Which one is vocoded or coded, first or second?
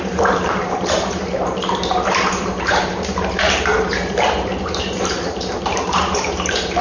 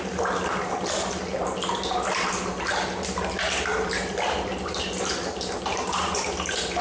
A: first